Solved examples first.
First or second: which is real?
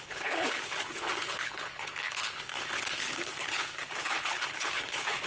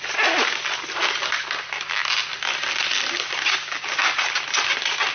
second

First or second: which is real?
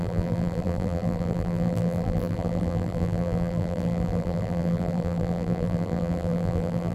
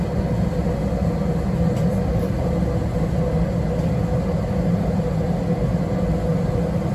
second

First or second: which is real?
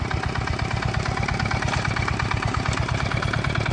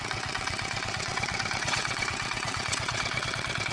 first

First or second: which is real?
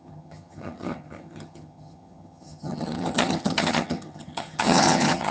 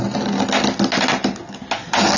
second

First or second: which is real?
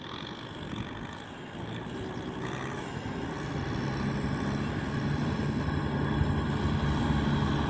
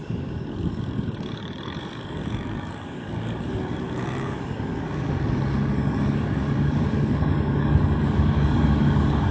first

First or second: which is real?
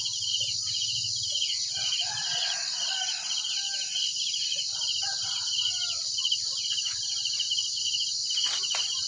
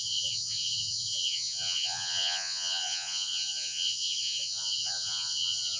first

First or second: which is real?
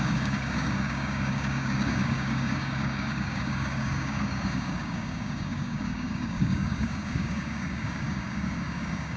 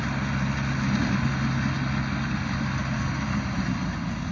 second